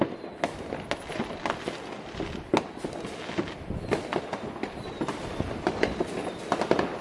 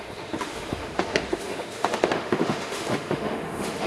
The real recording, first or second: first